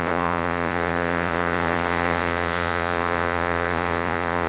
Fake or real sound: fake